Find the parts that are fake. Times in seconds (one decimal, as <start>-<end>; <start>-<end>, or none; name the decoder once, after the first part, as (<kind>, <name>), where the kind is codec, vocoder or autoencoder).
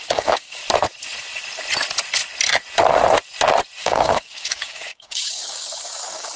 0.0-0.6 (codec, DAC); 3.8-6.4